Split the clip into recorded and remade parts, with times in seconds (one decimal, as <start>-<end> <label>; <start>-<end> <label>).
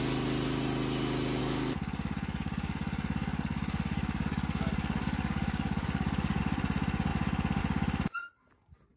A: 0.0-1.4 recorded; 1.4-6.4 remade; 6.4-9.0 recorded